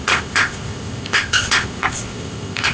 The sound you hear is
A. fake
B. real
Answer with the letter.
A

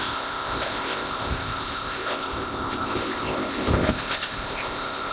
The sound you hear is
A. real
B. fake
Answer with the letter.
B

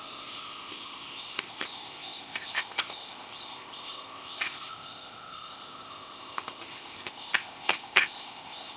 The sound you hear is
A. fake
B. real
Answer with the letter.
A